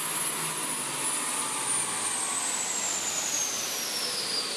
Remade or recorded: recorded